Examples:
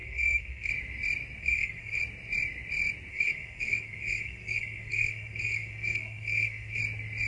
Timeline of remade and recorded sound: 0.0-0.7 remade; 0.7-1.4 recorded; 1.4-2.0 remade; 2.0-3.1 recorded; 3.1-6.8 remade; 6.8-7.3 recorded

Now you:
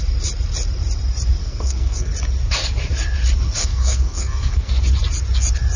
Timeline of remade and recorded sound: 0.0-1.4 recorded; 1.4-2.1 remade; 2.1-3.6 recorded; 3.6-4.7 remade; 4.7-5.8 recorded

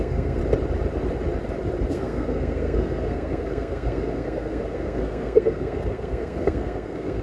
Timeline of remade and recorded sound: 0.0-0.4 remade; 0.4-1.9 recorded; 1.9-7.2 remade

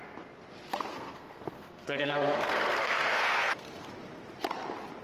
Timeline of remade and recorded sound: 0.0-0.9 recorded; 0.9-3.9 remade; 3.9-5.0 recorded